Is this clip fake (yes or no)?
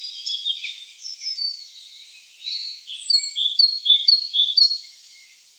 yes